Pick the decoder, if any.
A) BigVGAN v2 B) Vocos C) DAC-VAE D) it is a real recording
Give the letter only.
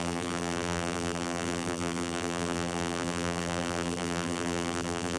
A